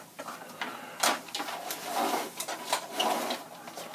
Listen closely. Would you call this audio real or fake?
real